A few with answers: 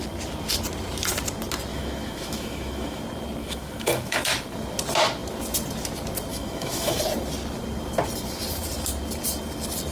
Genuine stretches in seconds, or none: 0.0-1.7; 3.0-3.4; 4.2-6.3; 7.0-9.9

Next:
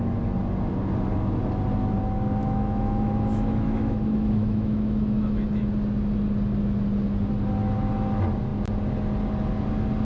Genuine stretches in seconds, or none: 0.0-2.4; 5.7-10.0